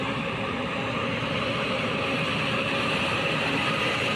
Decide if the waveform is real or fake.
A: fake